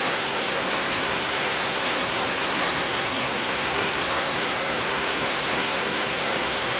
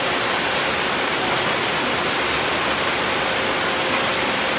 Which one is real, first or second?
second